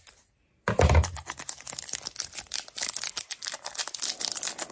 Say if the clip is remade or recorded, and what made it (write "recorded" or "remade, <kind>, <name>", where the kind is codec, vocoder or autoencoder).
recorded